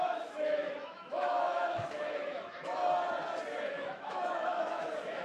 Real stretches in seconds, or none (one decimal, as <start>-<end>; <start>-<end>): 2.8-3.7